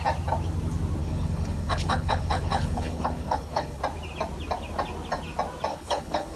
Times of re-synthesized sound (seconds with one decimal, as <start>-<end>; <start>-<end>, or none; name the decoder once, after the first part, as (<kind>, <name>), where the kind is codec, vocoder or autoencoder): 1.0-3.8 (codec, HILCodec); 5.7-6.4